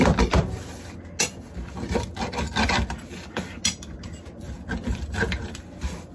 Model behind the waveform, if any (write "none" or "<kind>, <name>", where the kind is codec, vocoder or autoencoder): none